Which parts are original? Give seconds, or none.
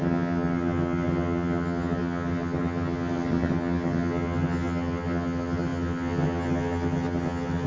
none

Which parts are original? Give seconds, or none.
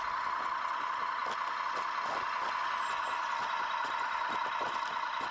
0.0-5.3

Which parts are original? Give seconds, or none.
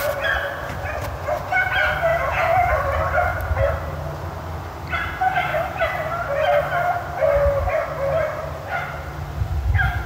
0.0-2.1; 2.7-10.1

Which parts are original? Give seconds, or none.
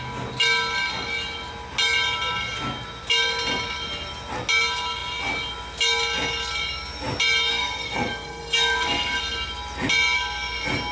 0.0-7.5; 9.2-10.9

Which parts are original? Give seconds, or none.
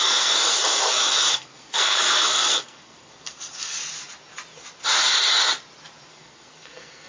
3.8-6.1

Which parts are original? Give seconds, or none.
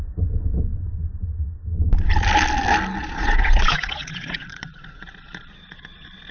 0.0-3.0